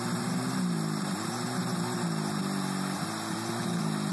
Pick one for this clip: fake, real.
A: real